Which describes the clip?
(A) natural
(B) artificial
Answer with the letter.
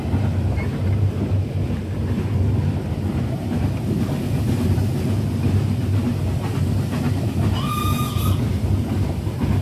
A